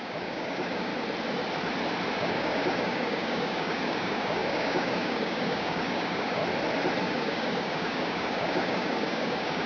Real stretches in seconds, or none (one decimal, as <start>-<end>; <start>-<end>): 0.9-2.1; 6.4-7.0